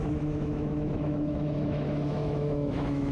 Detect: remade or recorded remade